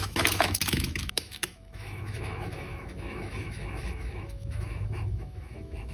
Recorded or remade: remade